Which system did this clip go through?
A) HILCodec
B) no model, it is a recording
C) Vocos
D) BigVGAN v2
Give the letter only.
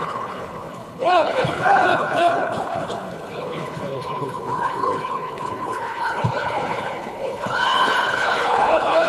A